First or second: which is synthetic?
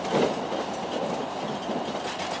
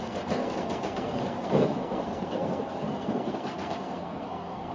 second